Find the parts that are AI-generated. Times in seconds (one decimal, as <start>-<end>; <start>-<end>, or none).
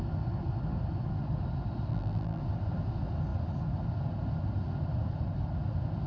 1.9-2.4